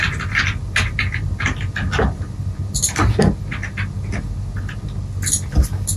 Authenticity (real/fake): real